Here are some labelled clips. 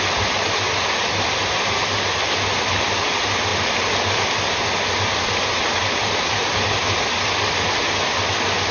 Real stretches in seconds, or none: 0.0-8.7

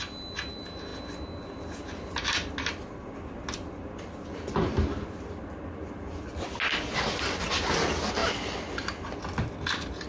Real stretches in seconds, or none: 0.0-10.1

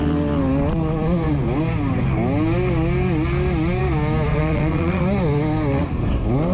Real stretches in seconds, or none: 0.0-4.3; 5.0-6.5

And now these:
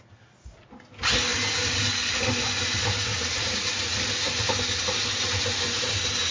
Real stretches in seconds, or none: 0.0-6.3